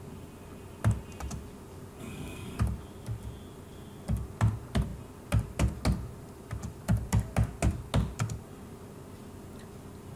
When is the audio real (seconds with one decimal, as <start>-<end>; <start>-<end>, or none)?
0.0-2.0; 2.6-10.2